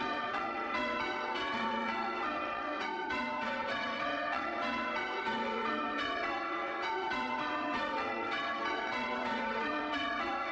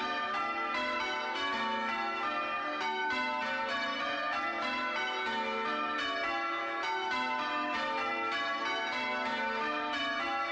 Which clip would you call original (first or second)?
second